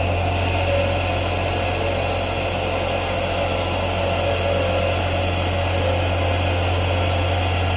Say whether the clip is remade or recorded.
recorded